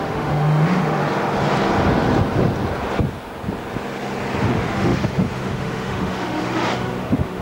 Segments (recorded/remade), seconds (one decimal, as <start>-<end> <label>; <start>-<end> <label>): 0.0-1.0 remade; 1.0-4.4 recorded; 4.4-7.4 remade